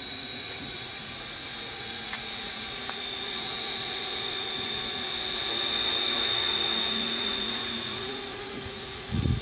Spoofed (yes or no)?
yes